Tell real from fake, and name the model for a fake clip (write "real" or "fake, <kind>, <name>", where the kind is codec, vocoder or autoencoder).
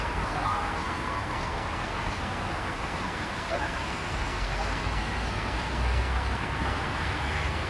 fake, codec, SNAC